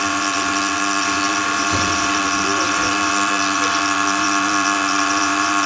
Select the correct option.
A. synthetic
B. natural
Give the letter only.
A